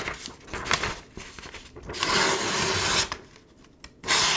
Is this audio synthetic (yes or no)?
no